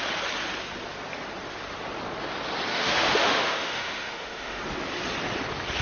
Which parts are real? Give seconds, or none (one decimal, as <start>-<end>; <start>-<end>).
0.0-2.7; 4.6-5.8